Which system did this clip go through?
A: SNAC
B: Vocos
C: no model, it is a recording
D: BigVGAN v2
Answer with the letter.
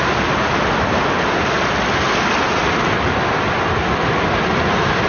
C